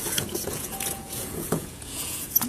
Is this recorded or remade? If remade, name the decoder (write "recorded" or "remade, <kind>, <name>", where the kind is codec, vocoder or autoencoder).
remade, vocoder, Vocos